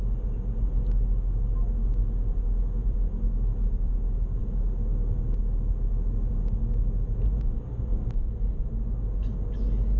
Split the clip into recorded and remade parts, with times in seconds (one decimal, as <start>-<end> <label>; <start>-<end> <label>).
0.0-2.8 recorded; 2.8-3.9 remade; 3.9-10.0 recorded